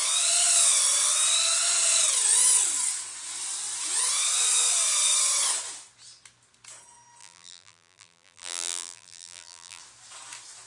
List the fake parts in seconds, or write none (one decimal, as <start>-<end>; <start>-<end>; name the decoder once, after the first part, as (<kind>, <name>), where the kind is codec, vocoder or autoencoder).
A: 7.2-9.8 (vocoder, BigVGAN v2)